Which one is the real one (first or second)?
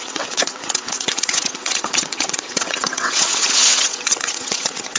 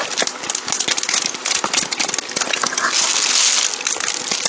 second